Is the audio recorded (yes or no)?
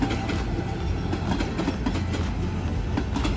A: yes